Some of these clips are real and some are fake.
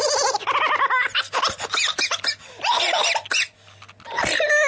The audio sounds real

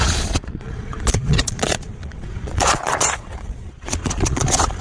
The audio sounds fake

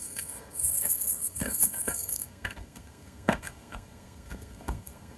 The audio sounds fake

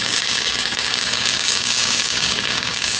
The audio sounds fake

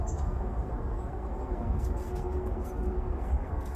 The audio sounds fake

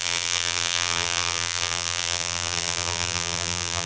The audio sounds fake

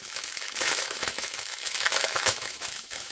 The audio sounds fake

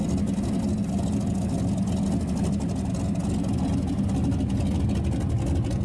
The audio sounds real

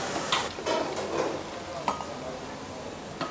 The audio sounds real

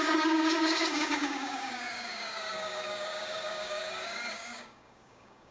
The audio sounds fake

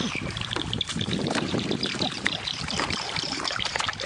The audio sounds fake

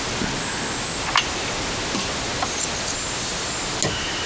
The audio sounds real